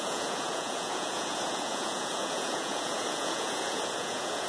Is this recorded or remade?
remade